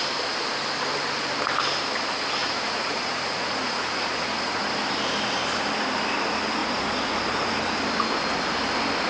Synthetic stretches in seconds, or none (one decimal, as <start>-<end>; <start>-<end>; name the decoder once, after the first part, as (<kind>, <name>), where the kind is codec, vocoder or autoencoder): 2.4-4.6 (vocoder, Vocos); 6.6-7.5